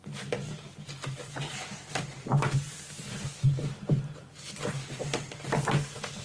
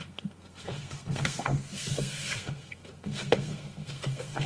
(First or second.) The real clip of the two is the first